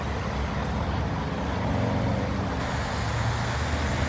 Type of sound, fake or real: real